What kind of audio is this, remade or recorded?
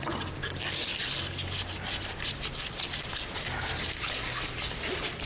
recorded